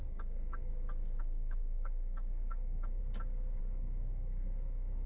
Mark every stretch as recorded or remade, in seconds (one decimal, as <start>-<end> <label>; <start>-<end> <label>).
0.0-0.7 remade; 0.7-1.2 recorded; 1.2-3.0 remade; 3.0-3.6 recorded; 3.6-5.1 remade